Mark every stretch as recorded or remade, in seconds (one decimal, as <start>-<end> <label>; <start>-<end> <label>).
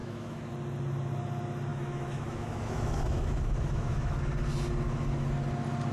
0.0-0.5 remade; 0.5-1.7 recorded; 1.7-4.2 remade; 4.2-5.9 recorded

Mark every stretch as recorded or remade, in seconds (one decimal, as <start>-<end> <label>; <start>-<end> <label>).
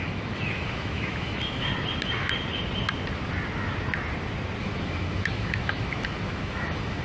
0.0-1.7 remade; 1.7-4.6 recorded; 4.6-7.0 remade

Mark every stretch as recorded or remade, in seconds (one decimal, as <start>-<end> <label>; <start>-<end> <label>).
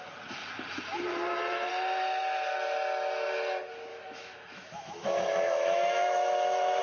0.0-3.9 recorded; 3.9-6.8 remade